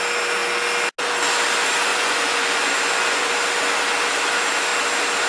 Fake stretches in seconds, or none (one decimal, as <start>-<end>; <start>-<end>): 1.9-3.3